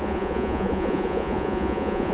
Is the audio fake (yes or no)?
yes